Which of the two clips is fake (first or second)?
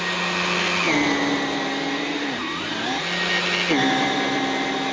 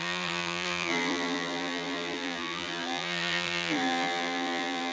second